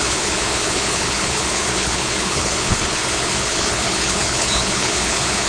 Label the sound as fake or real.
fake